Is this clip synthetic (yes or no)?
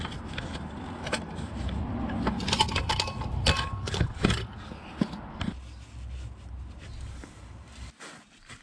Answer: no